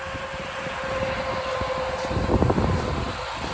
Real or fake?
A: real